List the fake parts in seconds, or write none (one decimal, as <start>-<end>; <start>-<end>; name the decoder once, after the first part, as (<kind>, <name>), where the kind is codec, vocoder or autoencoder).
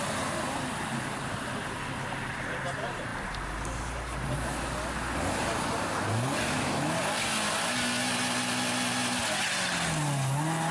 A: none